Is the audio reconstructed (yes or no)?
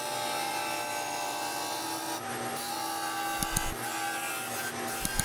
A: no